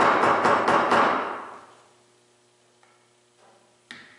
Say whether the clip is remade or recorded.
recorded